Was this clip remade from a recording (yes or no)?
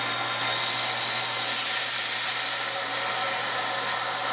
no